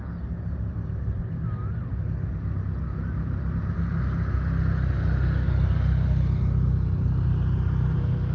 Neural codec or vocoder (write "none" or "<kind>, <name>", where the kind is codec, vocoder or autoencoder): none